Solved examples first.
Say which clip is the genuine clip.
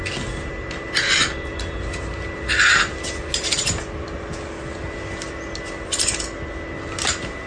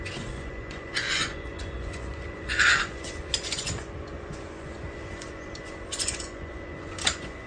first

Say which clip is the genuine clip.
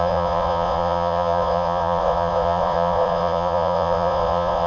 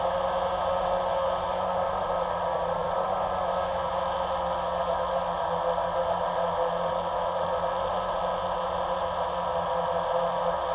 second